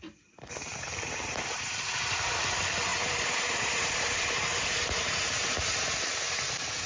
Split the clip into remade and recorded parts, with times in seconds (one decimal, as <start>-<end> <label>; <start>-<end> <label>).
0.0-0.6 recorded; 0.6-2.3 remade; 2.3-2.9 recorded; 2.9-6.0 remade; 6.0-6.9 recorded